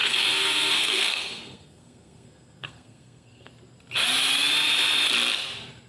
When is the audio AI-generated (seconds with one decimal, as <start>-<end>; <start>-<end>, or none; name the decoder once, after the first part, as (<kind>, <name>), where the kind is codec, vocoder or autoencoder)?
0.0-3.5 (codec, SNAC)